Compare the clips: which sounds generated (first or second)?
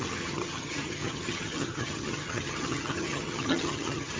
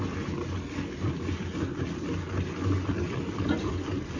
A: first